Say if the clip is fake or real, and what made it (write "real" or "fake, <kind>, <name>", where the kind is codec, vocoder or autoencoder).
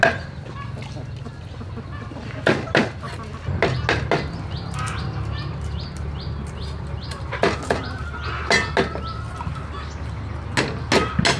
real